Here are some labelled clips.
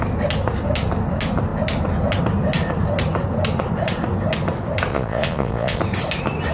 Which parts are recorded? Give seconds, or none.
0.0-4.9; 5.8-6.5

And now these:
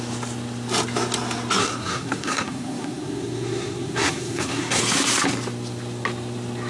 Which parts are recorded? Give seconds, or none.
0.0-1.6; 4.8-6.7